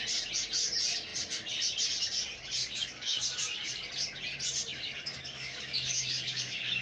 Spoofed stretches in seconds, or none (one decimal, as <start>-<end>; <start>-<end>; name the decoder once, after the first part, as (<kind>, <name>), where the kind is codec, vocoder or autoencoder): 2.6-3.9 (codec, DAC); 4.7-6.8